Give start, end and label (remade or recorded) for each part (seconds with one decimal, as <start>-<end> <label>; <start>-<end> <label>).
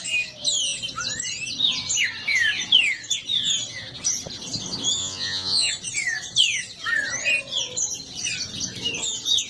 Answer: 0.0-5.0 recorded; 5.0-5.7 remade; 5.7-9.5 recorded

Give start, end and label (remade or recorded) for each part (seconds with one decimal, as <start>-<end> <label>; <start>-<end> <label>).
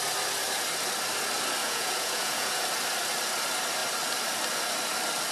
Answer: 0.0-1.6 recorded; 1.6-2.6 remade; 2.6-5.3 recorded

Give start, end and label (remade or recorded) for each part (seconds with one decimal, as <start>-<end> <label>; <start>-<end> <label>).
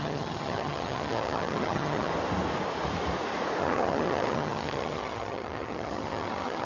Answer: 0.0-2.1 remade; 2.1-3.6 recorded; 3.6-6.7 remade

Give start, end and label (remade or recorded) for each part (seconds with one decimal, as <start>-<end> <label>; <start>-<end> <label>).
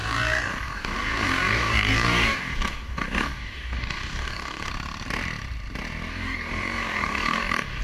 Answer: 0.0-4.7 remade; 4.7-6.1 recorded; 6.1-7.8 remade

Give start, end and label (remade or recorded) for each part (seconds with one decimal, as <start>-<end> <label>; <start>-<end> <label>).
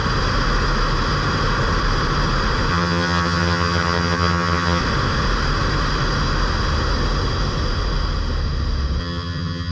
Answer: 0.0-2.7 recorded; 2.7-4.8 remade; 4.8-9.0 recorded; 9.0-9.7 remade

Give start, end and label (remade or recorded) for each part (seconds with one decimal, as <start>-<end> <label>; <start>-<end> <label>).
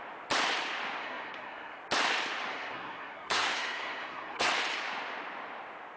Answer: 0.0-1.0 recorded; 1.0-1.8 remade; 1.8-2.5 recorded; 2.5-4.5 remade; 4.5-6.0 recorded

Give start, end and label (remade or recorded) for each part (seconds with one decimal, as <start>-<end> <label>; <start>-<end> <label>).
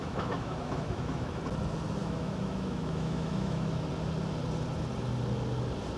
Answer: 0.0-1.4 remade; 1.4-2.0 recorded; 2.0-3.9 remade; 3.9-6.0 recorded